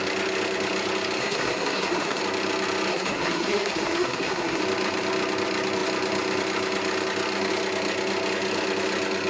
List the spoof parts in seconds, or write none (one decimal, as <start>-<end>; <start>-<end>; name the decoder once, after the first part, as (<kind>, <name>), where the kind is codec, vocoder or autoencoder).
1.2-2.2 (codec, SNAC); 2.9-4.6